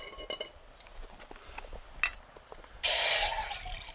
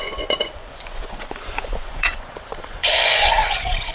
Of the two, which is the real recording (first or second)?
first